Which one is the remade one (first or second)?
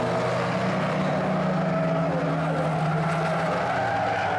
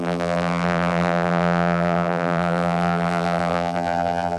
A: second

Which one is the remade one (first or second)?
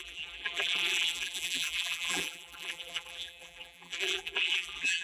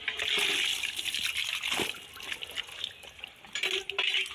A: first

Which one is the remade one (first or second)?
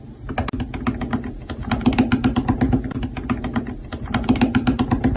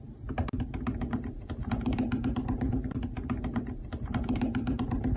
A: second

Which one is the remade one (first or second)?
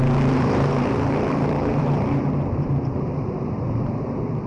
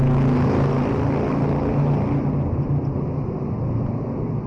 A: first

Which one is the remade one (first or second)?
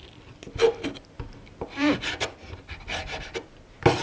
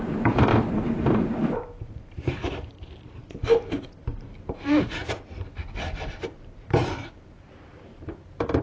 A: second